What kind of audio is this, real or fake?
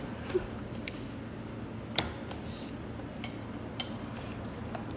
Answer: real